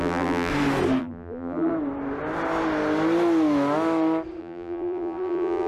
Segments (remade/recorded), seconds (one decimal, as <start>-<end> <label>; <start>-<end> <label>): 0.0-0.5 remade; 0.5-1.0 recorded; 1.0-1.7 remade; 1.7-4.4 recorded; 4.4-5.7 remade